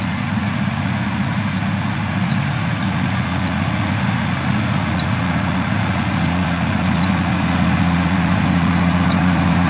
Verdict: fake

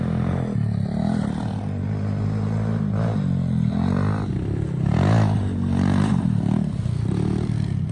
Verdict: real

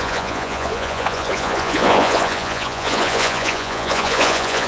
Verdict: fake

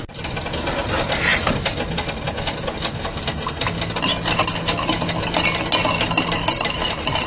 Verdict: real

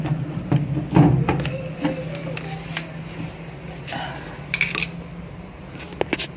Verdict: real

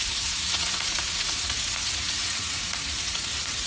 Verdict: fake